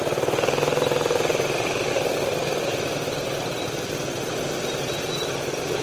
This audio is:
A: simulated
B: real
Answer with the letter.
B